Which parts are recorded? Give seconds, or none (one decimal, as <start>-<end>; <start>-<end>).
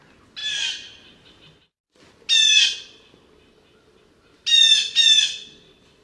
0.0-6.0